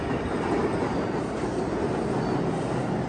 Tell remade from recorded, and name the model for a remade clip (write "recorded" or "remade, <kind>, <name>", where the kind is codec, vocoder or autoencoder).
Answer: recorded